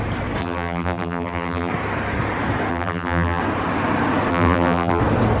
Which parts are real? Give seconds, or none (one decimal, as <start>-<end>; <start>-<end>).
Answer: 0.0-0.4; 1.7-2.7; 3.4-4.3; 5.0-5.4